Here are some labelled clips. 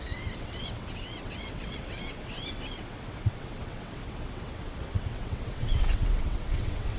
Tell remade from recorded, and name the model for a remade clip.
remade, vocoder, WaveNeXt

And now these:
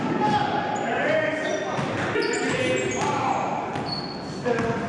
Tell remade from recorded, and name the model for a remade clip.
recorded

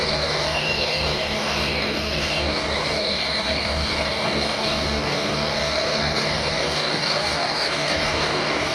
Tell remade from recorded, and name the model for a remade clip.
remade, codec, DAC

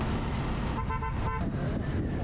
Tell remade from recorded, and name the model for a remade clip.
recorded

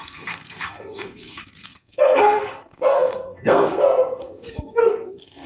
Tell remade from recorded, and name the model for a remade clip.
remade, codec, SNAC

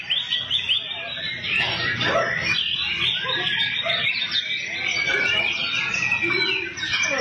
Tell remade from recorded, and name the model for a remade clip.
recorded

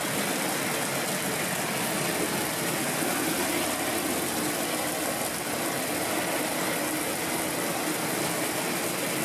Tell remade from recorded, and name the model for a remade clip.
recorded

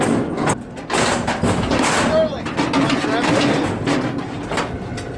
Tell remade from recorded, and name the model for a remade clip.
recorded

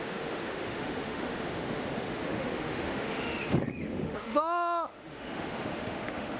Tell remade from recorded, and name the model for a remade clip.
remade, autoencoder, DAC-VAE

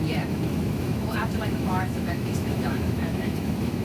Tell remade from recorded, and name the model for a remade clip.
remade, autoencoder, DAC-VAE